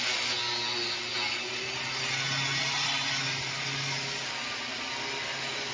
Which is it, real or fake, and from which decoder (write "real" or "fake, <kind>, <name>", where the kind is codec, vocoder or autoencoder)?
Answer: real